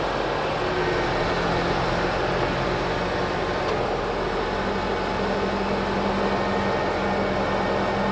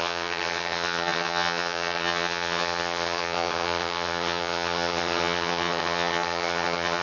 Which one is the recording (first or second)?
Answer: first